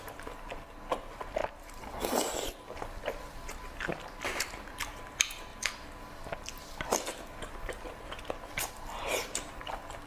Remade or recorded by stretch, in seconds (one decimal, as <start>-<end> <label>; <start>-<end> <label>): 0.0-1.4 recorded; 1.4-1.9 remade; 1.9-5.5 recorded; 5.5-7.6 remade; 7.6-10.1 recorded